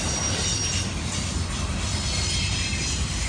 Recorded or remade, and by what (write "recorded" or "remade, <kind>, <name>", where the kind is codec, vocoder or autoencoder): recorded